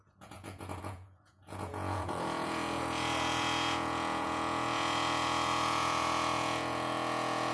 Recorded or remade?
remade